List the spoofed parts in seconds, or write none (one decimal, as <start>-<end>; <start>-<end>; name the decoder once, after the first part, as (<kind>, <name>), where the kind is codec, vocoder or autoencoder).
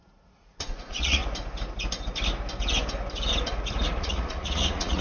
0.0-1.2 (vocoder, Vocos); 4.0-5.0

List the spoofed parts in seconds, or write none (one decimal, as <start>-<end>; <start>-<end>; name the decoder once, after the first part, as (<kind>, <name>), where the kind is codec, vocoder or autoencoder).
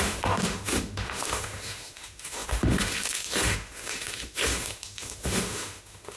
0.0-6.2 (autoencoder, DAC-VAE)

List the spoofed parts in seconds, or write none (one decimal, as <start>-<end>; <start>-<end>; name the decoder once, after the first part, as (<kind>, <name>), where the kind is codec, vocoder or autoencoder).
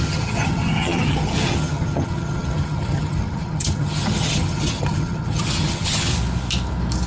0.0-6.1 (vocoder, HiFi-GAN)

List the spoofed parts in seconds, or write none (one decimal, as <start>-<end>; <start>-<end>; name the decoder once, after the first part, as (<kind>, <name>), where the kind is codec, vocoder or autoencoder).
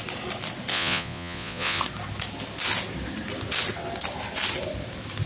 0.7-1.8 (vocoder, Vocos)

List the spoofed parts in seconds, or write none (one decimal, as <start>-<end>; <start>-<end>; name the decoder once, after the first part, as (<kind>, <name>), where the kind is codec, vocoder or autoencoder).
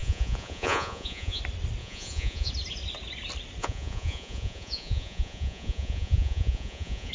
0.0-1.4 (vocoder, Vocos); 1.8-2.5; 3.6-7.1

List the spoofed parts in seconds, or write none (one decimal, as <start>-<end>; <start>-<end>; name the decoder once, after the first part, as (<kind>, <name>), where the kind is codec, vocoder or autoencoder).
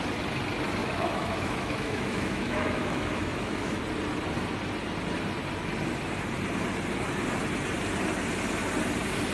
0.8-3.8 (autoencoder, DAC-VAE)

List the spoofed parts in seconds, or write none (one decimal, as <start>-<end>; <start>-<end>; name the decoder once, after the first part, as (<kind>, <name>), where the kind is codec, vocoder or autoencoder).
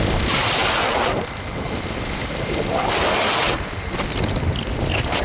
none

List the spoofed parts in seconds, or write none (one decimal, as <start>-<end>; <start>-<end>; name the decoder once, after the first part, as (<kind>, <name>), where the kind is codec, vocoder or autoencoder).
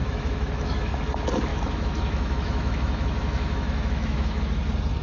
0.0-1.0 (autoencoder, DAC-VAE); 1.5-4.5